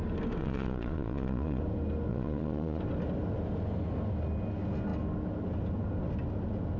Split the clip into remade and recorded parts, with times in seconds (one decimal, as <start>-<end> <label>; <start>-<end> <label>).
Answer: 0.0-0.4 recorded; 0.4-1.6 remade; 1.6-2.1 recorded; 2.1-2.8 remade; 2.8-6.8 recorded